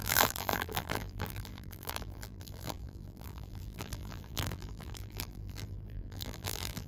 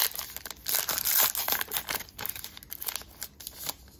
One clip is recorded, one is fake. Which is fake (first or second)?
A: first